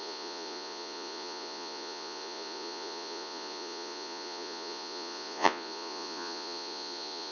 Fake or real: fake